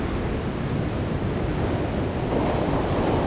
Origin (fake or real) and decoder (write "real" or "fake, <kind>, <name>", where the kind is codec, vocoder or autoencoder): real